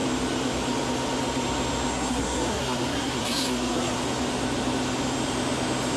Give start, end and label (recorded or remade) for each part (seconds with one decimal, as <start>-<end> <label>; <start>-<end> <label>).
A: 0.0-1.9 recorded; 1.9-4.0 remade; 4.0-6.0 recorded